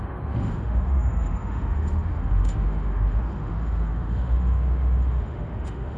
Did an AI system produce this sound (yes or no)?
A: yes